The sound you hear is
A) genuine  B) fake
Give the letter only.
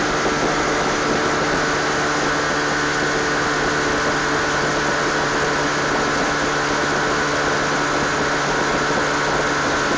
A